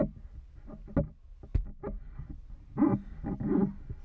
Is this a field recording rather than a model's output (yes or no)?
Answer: yes